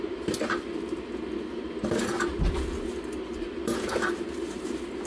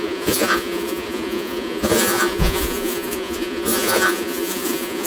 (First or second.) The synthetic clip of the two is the second